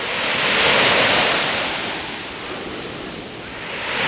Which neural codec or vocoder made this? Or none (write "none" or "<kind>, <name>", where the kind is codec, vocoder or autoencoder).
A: none